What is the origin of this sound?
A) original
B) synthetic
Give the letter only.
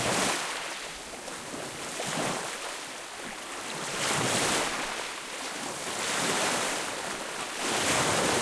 A